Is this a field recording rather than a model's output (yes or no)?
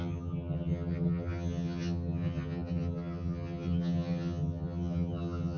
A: no